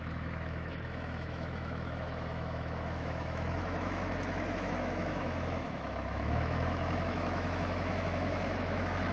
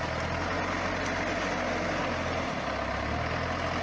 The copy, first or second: first